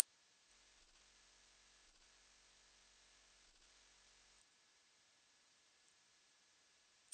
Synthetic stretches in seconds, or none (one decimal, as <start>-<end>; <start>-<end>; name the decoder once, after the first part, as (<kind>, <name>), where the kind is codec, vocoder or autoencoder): 0.5-4.4 (codec, SNAC)